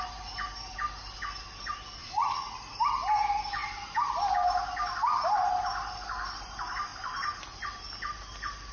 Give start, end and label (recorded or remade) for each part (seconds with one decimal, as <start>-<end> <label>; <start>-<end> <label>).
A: 0.0-2.0 recorded; 2.0-2.6 remade; 2.6-8.7 recorded